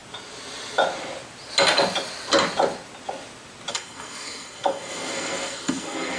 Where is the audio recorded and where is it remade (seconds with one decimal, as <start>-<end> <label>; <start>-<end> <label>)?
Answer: 0.0-3.7 recorded; 3.7-6.2 remade